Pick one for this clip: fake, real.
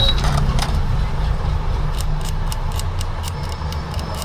fake